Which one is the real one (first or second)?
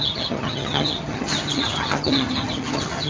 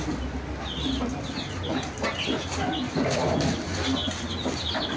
second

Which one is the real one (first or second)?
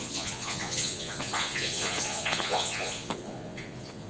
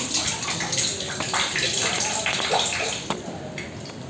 second